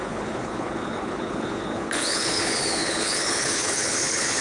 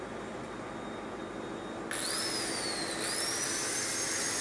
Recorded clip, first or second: second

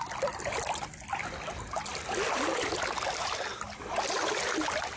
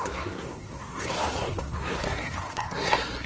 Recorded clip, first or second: first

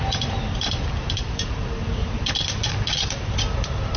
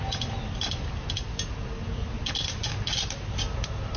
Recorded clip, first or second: second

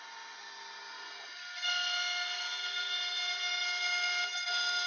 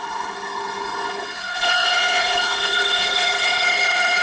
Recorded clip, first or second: first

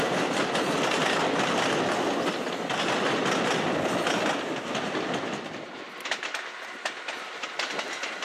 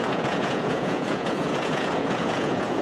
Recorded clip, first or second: first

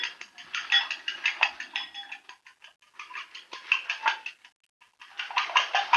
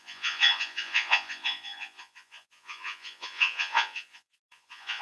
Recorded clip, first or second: first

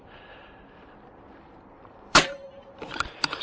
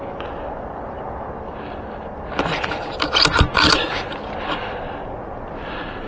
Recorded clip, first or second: second